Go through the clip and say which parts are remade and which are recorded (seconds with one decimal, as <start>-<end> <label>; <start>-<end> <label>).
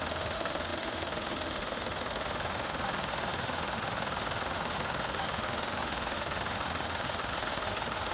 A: 0.0-8.1 remade